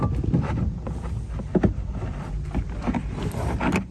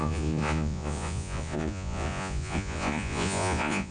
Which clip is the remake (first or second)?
second